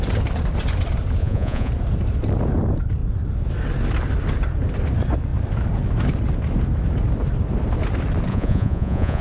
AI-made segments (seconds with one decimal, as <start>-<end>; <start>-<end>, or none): 1.2-1.7; 8.3-9.2